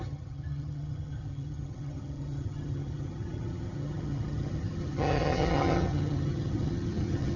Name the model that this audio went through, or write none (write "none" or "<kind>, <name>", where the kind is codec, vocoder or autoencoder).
vocoder, HiFi-GAN